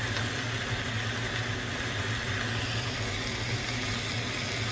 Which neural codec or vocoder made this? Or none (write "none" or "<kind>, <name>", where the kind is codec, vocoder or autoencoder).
none